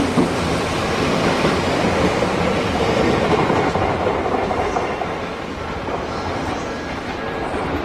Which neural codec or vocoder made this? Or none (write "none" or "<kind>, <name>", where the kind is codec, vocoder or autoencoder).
vocoder, BigVGAN v2